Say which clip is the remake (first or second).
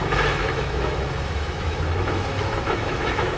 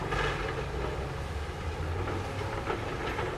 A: first